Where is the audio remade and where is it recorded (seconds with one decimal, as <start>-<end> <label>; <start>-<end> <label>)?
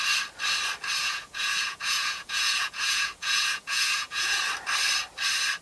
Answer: 0.0-1.0 recorded; 1.0-4.4 remade; 4.4-5.6 recorded